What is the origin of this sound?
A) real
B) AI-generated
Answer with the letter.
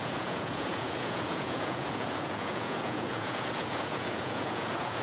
B